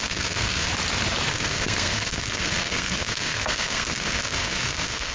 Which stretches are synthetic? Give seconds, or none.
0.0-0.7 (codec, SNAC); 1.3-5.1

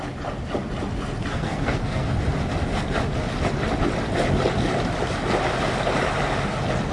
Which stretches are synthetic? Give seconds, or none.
1.3-2.1 (codec, SNAC)

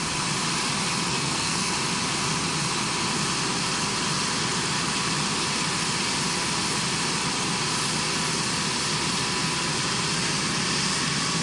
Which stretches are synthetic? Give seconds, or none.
1.1-1.7 (codec, SNAC)

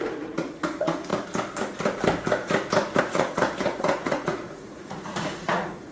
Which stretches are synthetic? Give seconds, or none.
0.0-1.1 (vocoder, Vocos); 3.0-5.9

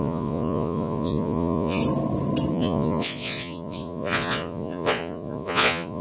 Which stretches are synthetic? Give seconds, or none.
0.0-1.8 (vocoder, Vocos); 2.5-6.0

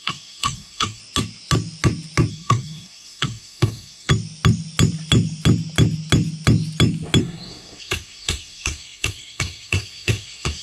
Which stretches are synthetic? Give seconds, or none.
0.0-1.0 (codec, SNAC); 2.3-4.1; 7.2-10.6

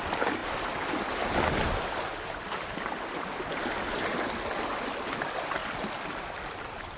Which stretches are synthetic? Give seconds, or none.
none